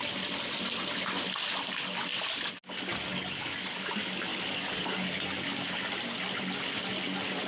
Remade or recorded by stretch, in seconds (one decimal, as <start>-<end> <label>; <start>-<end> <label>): 0.0-3.1 recorded; 3.1-3.9 remade; 3.9-4.3 recorded; 4.3-5.2 remade; 5.2-7.5 recorded

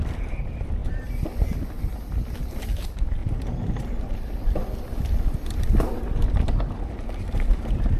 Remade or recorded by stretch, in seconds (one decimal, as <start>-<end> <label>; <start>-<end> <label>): 0.0-0.8 recorded; 0.8-1.7 remade; 1.7-3.2 recorded; 3.2-6.0 remade; 6.0-8.0 recorded

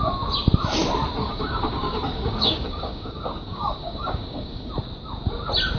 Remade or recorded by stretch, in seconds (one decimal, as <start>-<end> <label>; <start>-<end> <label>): 0.0-1.2 recorded; 1.2-4.7 remade; 4.7-5.8 recorded

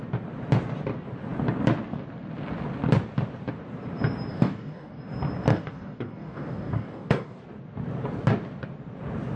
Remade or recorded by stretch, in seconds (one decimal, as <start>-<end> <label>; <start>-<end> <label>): 0.0-4.3 recorded; 4.3-5.0 remade; 5.0-5.5 recorded; 5.5-7.4 remade; 7.4-9.4 recorded

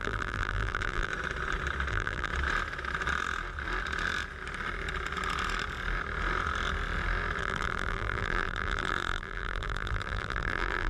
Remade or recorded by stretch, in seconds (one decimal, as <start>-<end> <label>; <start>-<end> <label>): 0.0-1.1 remade; 1.1-1.9 recorded; 1.9-2.3 remade; 2.3-7.4 recorded; 7.4-10.9 remade

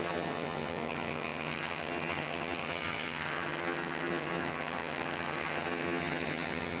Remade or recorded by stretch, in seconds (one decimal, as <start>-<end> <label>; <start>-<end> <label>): 0.0-6.8 remade